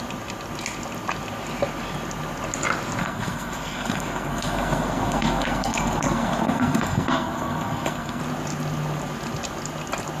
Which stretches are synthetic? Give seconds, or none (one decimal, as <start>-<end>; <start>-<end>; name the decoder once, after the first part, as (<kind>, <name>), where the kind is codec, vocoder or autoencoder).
3.0-8.2 (codec, SNAC)